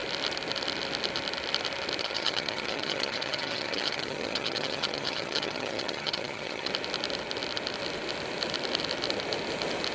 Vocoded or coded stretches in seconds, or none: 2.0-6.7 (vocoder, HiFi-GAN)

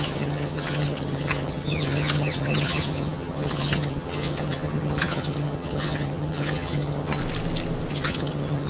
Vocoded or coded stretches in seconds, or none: 0.0-7.2 (vocoder, HiFi-GAN); 7.9-8.7